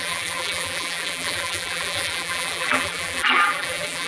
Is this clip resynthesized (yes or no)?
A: yes